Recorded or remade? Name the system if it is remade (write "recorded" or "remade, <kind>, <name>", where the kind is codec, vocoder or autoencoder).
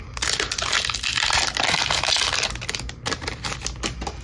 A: recorded